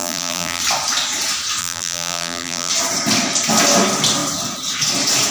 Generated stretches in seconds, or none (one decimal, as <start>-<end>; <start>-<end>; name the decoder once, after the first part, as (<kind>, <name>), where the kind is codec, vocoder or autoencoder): 0.0-0.6 (vocoder, BigVGAN v2); 1.6-2.7